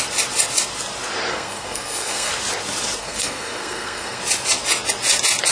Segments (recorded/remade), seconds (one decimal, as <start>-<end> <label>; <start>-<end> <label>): 0.0-1.3 recorded; 1.3-2.3 remade; 2.3-3.0 recorded; 3.0-4.2 remade; 4.2-5.5 recorded